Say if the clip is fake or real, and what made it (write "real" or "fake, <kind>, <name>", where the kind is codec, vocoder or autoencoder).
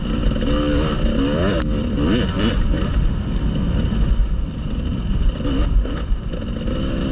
real